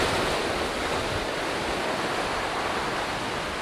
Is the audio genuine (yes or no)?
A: yes